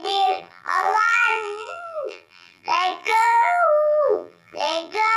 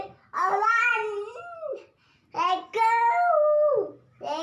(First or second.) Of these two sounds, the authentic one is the second